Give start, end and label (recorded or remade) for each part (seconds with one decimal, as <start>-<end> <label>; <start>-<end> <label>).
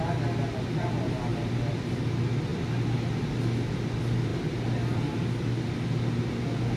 0.0-1.3 recorded; 1.3-1.9 remade; 1.9-6.8 recorded